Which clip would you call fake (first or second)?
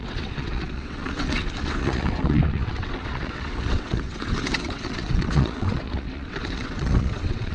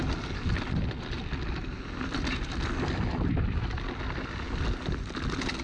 first